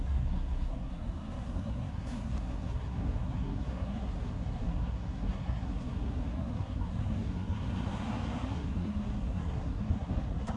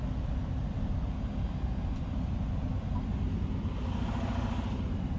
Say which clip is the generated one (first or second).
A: first